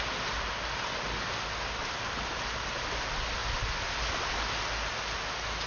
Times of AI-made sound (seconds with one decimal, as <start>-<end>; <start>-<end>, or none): none